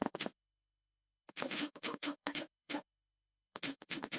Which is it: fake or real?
fake